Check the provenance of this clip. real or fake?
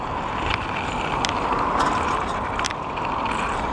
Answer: real